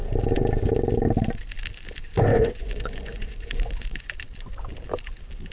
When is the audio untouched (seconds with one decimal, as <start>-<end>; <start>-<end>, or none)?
0.0-2.3; 4.1-5.5